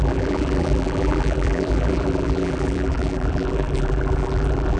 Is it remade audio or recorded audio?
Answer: remade